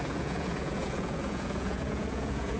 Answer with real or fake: fake